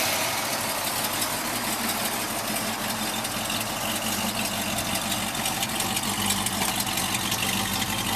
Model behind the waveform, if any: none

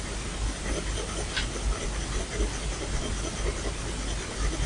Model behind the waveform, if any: none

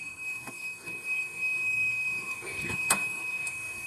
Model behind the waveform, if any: codec, DAC